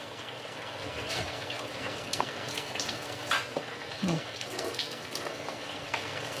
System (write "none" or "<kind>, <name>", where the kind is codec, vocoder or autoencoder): codec, SNAC